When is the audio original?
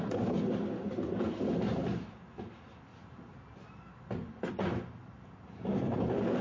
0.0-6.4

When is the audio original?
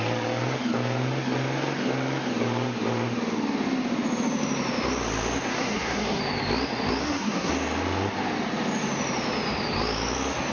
0.0-5.5; 6.2-7.0; 7.5-10.5